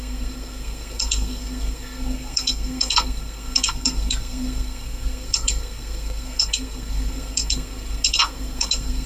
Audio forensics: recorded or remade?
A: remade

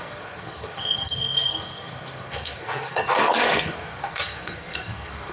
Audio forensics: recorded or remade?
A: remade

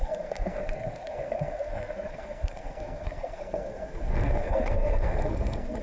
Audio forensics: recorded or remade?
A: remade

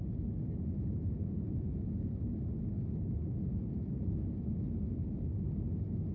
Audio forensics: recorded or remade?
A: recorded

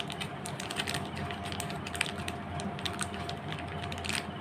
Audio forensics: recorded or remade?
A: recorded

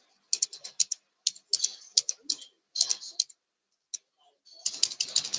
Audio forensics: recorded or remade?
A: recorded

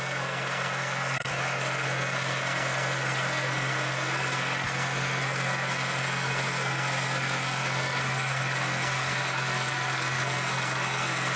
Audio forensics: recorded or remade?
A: remade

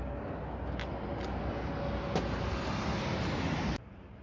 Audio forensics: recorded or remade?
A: recorded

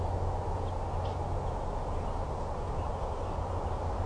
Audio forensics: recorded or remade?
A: recorded